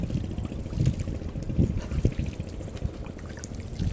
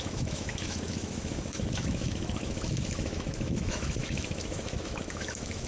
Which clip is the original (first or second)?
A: first